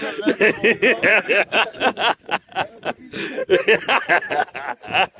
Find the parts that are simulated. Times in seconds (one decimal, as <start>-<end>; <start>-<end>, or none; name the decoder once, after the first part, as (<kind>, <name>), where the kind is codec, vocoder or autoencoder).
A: 1.1-1.8 (codec, DAC)